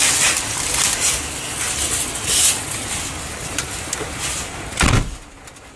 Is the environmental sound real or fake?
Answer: real